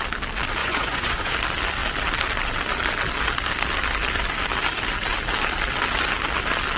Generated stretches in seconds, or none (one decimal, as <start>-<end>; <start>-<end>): 0.6-1.3